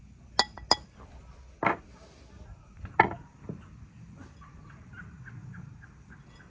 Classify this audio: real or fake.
real